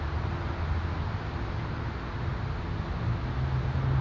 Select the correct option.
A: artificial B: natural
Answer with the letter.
B